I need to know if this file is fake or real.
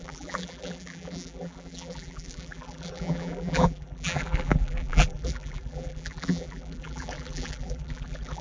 fake